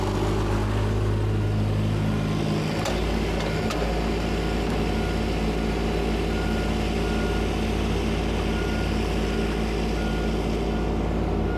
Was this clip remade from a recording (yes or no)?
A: no